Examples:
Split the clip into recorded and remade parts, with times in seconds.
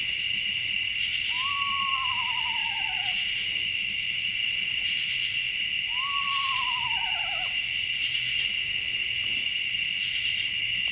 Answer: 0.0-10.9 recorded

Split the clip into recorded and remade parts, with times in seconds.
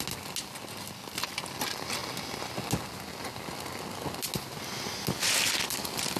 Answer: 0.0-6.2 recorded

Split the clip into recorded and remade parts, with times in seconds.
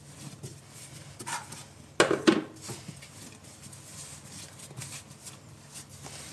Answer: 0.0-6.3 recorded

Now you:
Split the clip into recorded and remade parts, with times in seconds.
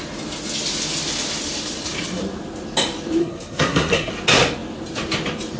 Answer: 0.0-3.2 recorded; 3.2-4.1 remade; 4.1-5.6 recorded